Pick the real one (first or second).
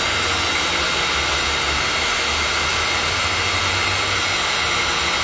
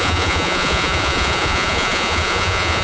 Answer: first